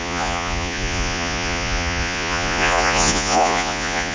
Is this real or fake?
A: fake